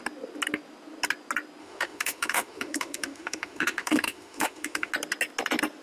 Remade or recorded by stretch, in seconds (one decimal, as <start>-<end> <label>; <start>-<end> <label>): 0.0-1.6 recorded; 1.6-4.9 remade; 4.9-5.8 recorded